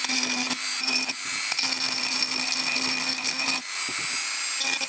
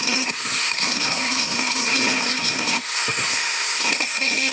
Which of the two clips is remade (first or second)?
second